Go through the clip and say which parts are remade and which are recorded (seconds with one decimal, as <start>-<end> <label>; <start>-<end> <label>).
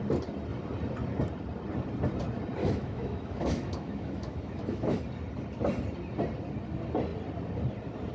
0.0-2.6 recorded; 2.6-5.0 remade; 5.0-8.1 recorded